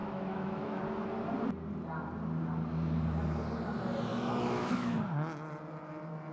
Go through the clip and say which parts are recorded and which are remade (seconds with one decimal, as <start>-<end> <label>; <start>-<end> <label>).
0.0-0.8 remade; 0.8-4.1 recorded; 4.1-5.0 remade; 5.0-6.3 recorded